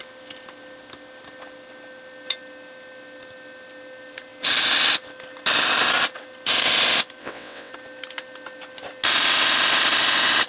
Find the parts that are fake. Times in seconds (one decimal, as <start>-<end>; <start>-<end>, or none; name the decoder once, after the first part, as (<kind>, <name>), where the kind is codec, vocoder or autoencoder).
7.2-7.7 (vocoder, WaveNeXt)

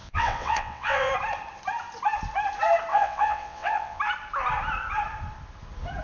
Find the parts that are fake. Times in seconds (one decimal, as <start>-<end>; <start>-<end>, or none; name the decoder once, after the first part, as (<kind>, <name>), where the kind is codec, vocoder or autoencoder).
0.0-1.1 (vocoder, WaveNeXt); 2.9-4.0

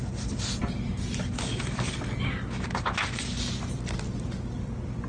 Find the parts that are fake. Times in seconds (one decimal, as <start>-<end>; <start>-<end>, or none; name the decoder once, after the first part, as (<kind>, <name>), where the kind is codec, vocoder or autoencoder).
none

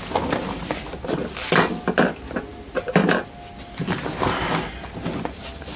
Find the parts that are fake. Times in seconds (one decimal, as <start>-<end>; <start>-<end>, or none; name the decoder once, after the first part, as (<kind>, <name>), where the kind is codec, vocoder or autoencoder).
none

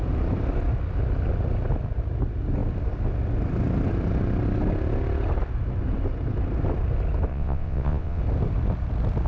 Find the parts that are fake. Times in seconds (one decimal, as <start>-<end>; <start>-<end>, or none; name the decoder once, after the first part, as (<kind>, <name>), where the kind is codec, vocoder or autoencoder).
7.3-8.2 (vocoder, WaveNeXt)